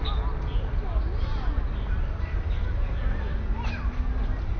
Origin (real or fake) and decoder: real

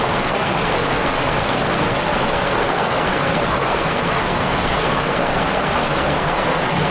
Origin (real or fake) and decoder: fake, codec, SNAC